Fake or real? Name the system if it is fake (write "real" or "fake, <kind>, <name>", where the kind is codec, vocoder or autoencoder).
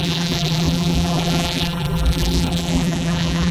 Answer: fake, vocoder, BigVGAN v2